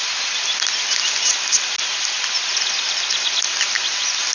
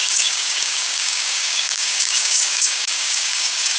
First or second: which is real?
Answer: first